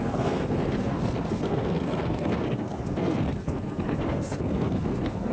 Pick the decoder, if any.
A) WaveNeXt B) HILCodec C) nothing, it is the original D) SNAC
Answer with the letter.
D